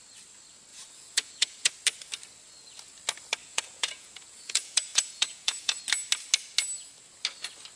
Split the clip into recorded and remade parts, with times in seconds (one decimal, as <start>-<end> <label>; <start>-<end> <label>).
0.0-0.7 recorded; 0.7-1.7 remade; 1.7-3.4 recorded; 3.4-5.8 remade; 5.8-7.8 recorded